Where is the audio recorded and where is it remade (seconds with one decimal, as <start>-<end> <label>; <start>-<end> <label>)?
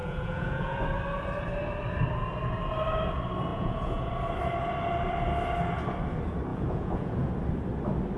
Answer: 0.0-0.8 remade; 0.8-3.5 recorded; 3.5-4.1 remade; 4.1-6.5 recorded; 6.5-7.3 remade; 7.3-8.2 recorded